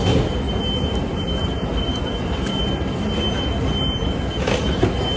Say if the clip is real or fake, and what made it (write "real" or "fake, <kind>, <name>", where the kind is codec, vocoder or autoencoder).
real